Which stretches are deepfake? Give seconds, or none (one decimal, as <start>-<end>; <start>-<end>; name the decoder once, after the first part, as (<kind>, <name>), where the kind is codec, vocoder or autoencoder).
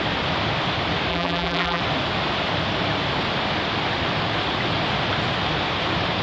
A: 1.1-1.8 (vocoder, BigVGAN v2)